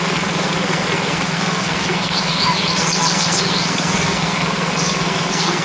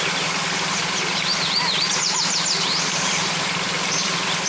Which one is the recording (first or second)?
second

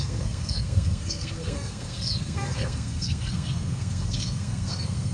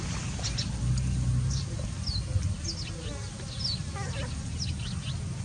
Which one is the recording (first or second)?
second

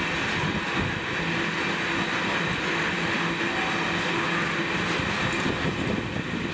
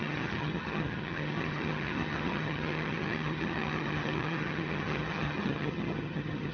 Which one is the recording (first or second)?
first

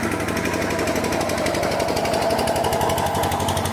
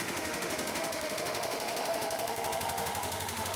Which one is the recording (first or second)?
first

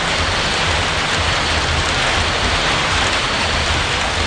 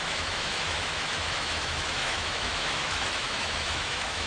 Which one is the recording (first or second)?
first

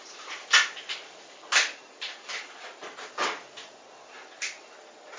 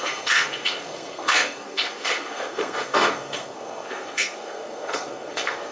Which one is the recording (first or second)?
first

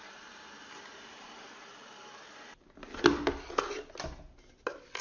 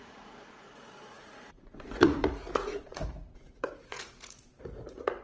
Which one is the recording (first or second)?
first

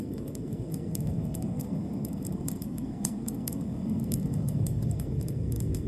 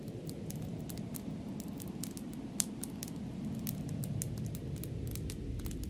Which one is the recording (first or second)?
second